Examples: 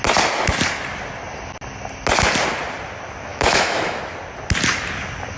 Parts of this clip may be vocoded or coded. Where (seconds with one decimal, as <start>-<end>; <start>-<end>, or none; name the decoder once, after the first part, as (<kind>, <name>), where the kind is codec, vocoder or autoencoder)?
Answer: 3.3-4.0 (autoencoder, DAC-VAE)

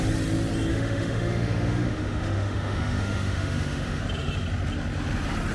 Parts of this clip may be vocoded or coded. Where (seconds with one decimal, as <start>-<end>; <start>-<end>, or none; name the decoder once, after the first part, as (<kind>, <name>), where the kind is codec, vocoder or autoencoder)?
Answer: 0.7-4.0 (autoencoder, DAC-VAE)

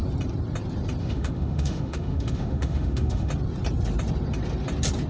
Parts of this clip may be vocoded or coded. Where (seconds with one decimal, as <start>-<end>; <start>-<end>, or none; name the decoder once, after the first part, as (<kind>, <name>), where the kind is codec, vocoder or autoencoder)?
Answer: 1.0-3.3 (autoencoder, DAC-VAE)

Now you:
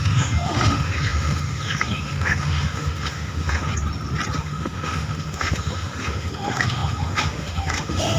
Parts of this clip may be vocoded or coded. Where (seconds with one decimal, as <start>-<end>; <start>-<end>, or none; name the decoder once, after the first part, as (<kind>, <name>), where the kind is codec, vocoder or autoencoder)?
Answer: 0.0-3.7 (autoencoder, DAC-VAE); 4.4-8.2